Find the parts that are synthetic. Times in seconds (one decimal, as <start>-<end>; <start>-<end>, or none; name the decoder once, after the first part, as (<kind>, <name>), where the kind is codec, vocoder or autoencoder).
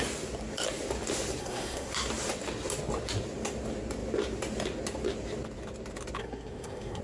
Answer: 1.4-1.9 (codec, SNAC); 6.2-7.0